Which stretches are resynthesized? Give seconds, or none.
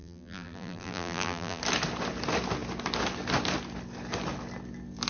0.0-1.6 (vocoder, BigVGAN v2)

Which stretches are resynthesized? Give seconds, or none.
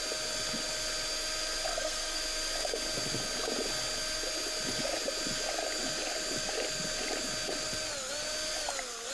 1.7-2.2 (codec, SNAC)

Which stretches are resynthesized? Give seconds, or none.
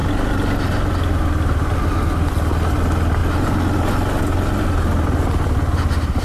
none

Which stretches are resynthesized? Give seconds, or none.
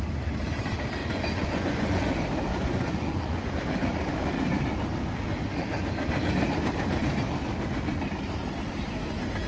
1.0-2.1 (vocoder, Vocos); 2.5-3.5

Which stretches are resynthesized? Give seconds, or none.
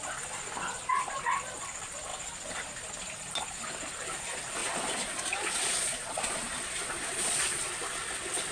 4.6-7.7 (vocoder, Vocos)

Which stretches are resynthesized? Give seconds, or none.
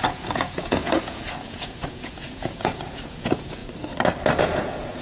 0.0-3.6 (vocoder, Vocos); 4.4-5.0